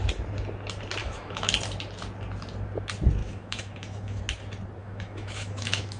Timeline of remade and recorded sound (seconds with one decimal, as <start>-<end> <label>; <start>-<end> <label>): 0.0-1.0 recorded; 1.0-1.5 remade; 1.5-3.2 recorded; 3.2-4.2 remade; 4.2-4.8 recorded; 4.8-6.0 remade

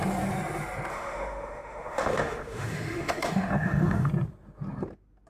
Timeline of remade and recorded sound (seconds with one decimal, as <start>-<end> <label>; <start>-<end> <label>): 0.0-0.9 recorded; 0.9-4.1 remade; 4.1-5.3 recorded

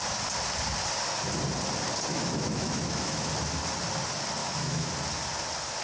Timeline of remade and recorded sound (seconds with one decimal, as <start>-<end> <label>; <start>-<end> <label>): 0.0-2.1 recorded; 2.1-3.3 remade; 3.3-4.4 recorded; 4.4-4.9 remade; 4.9-5.8 recorded

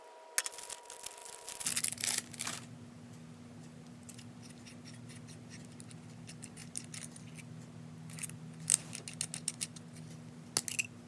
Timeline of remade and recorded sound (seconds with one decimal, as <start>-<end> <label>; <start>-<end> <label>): 0.0-11.1 recorded

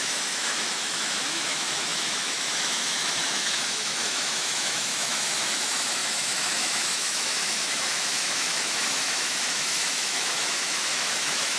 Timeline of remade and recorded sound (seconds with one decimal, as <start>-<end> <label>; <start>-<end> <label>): 0.0-11.6 remade

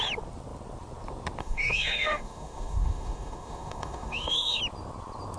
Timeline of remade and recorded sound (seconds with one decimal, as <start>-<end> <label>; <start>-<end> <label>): 0.0-1.4 recorded; 1.4-4.6 remade; 4.6-5.4 recorded